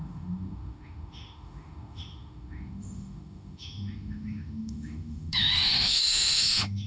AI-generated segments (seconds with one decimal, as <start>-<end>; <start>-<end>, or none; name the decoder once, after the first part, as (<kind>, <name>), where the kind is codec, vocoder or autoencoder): 0.0-6.9 (autoencoder, DAC-VAE)

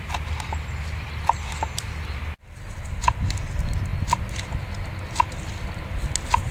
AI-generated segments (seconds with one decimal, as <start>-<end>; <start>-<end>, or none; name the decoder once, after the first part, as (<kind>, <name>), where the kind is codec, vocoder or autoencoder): none

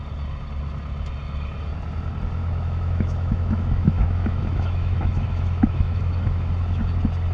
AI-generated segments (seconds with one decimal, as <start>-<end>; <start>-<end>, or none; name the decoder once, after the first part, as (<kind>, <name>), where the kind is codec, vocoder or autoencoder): 2.4-6.5 (autoencoder, DAC-VAE)

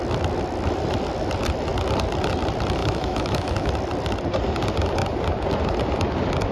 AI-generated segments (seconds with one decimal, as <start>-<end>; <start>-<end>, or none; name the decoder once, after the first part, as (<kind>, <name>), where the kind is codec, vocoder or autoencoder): 2.8-3.7 (autoencoder, DAC-VAE)